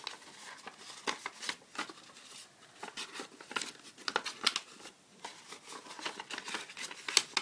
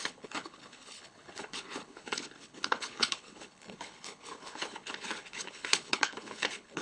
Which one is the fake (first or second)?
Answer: second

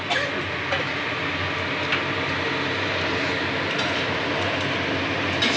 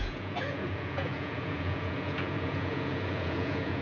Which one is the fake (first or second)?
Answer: second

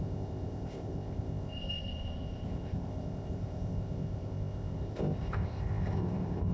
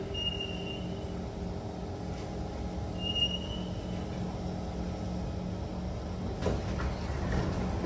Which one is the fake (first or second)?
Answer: first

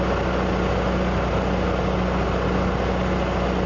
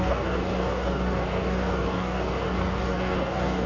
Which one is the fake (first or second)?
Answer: second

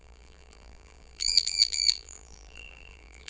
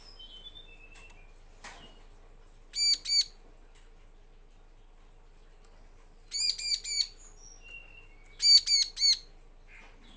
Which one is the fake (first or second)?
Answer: first